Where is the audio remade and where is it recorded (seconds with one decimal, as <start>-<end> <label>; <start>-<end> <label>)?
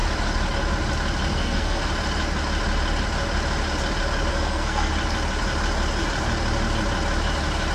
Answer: 0.0-1.3 recorded; 1.3-1.8 remade; 1.8-4.3 recorded; 4.3-4.9 remade; 4.9-7.7 recorded